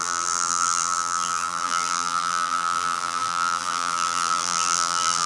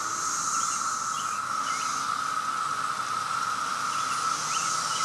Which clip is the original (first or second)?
second